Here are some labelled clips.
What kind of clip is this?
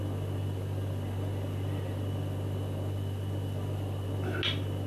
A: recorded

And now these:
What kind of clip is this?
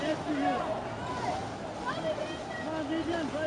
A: recorded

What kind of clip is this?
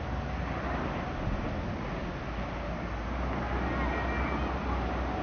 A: recorded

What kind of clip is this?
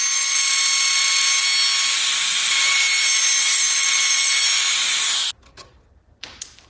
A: recorded